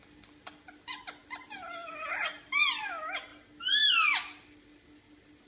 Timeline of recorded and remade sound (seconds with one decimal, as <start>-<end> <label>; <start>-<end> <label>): 0.0-5.5 recorded

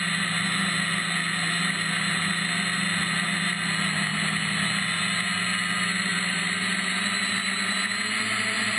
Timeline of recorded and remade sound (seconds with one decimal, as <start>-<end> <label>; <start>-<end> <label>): 0.0-6.1 recorded; 6.1-6.7 remade; 6.7-8.8 recorded

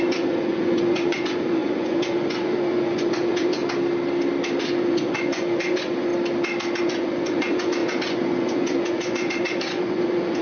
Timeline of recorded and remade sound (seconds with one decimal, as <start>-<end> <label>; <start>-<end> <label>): 0.0-3.6 remade; 3.6-4.6 recorded; 4.6-6.1 remade; 6.1-6.8 recorded; 6.8-10.4 remade

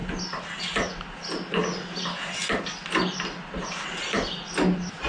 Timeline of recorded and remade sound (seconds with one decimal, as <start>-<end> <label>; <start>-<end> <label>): 0.0-5.1 recorded

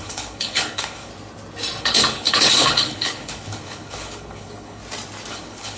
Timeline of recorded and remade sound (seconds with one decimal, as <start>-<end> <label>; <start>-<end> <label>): 0.0-1.1 remade; 1.1-1.8 recorded; 1.8-4.8 remade; 4.8-5.3 recorded; 5.3-5.8 remade